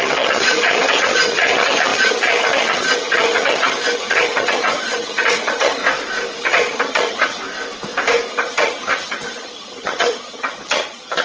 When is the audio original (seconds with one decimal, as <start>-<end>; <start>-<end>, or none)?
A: 5.8-6.4; 7.4-8.3